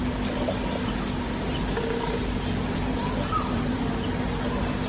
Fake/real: real